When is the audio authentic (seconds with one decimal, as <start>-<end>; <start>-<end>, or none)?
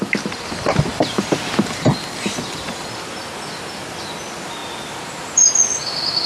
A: 0.0-0.9; 2.9-6.3